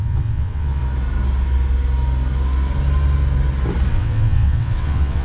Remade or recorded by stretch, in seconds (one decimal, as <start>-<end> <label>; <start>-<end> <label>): 0.0-0.8 remade; 0.8-3.9 recorded; 3.9-5.2 remade

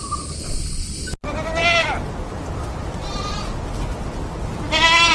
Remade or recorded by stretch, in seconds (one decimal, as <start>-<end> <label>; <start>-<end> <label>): 0.0-5.1 recorded

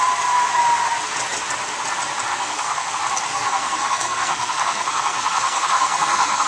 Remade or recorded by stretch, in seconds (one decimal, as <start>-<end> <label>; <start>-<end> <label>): 0.0-2.3 recorded; 2.3-2.9 remade; 2.9-3.3 recorded; 3.3-6.5 remade

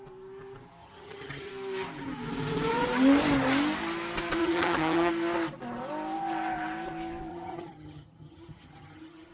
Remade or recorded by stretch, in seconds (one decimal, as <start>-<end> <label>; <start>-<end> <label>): 0.0-0.8 recorded; 0.8-1.5 remade; 1.5-4.4 recorded; 4.4-5.1 remade; 5.1-7.3 recorded; 7.3-9.3 remade

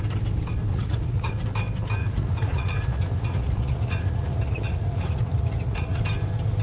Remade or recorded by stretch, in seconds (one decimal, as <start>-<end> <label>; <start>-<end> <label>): 0.0-0.7 recorded; 0.7-1.3 remade; 1.3-2.0 recorded; 2.0-6.0 remade; 6.0-6.6 recorded

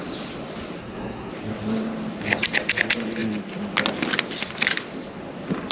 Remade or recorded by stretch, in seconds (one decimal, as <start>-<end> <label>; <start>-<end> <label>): 0.0-0.8 recorded; 0.8-1.3 remade; 1.3-5.7 recorded

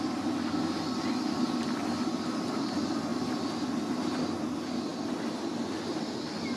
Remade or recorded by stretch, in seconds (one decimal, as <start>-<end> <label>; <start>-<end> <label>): 0.0-6.6 recorded